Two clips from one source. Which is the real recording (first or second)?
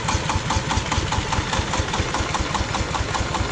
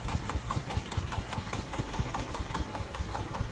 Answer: first